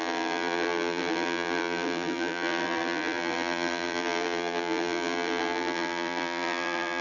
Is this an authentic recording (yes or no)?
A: no